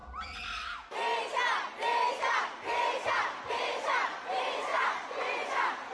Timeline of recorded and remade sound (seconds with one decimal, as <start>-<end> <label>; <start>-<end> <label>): 0.0-4.7 recorded; 4.7-5.5 remade; 5.5-5.9 recorded